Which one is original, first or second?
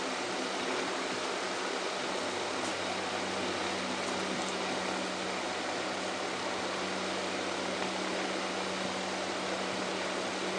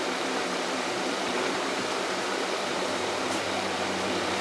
first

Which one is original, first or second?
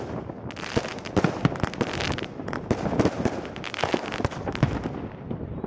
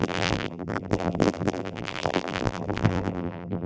first